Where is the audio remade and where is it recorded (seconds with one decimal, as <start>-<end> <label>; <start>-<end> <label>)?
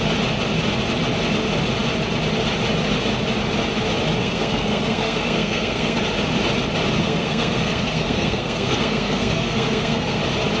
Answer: 0.0-4.2 recorded; 4.2-6.0 remade; 6.0-7.0 recorded; 7.0-10.2 remade; 10.2-10.6 recorded